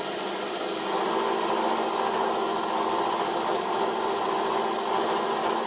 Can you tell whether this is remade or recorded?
recorded